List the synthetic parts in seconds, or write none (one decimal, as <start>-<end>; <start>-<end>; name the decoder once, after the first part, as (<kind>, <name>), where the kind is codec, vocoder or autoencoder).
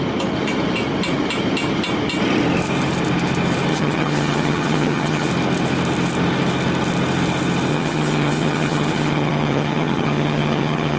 3.7-5.3 (vocoder, HiFi-GAN); 7.7-11.0